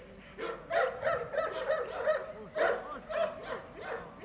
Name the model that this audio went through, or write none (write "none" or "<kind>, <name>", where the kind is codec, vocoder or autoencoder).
none